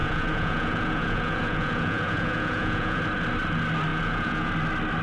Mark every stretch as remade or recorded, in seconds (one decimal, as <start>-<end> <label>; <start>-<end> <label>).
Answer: 0.0-3.0 remade; 3.0-3.9 recorded; 3.9-4.5 remade; 4.5-5.0 recorded